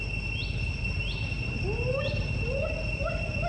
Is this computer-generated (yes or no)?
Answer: no